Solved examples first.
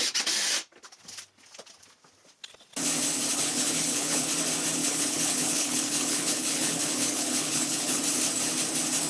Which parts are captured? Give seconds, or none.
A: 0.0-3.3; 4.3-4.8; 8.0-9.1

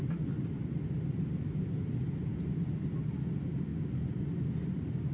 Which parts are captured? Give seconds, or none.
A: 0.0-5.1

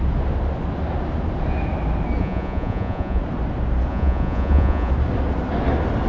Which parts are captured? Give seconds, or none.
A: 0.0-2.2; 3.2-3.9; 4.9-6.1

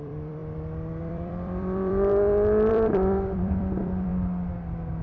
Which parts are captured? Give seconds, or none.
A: 0.4-1.0; 2.1-2.7; 4.1-5.0

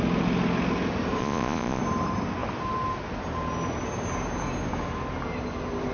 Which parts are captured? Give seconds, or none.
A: 0.0-1.2; 1.8-5.9

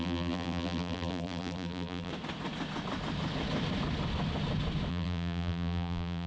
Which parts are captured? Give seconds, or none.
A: 2.1-4.9